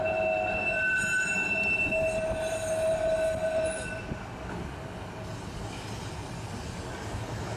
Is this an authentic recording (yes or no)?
yes